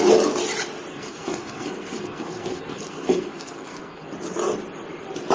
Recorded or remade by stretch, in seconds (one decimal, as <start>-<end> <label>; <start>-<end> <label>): 0.0-0.9 recorded; 0.9-4.1 remade; 4.1-5.3 recorded